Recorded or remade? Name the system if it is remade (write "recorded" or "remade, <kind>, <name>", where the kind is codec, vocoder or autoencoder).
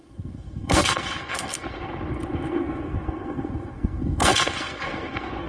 remade, codec, SNAC